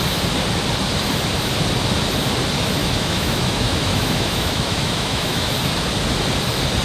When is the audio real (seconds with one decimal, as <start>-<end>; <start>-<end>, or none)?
0.0-2.8; 5.5-6.8